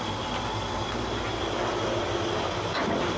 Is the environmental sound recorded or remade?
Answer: recorded